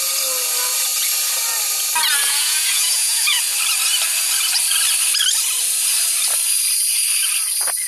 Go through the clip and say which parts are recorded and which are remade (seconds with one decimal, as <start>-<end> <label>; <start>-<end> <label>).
0.0-2.2 recorded; 2.2-3.4 remade; 3.4-7.9 recorded